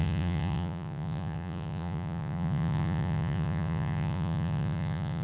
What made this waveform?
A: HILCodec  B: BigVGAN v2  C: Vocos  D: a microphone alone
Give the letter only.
C